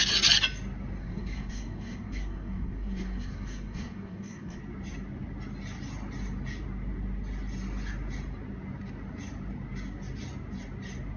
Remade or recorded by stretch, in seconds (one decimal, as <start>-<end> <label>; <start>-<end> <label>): 0.0-1.0 recorded; 1.0-4.6 remade; 4.6-11.2 recorded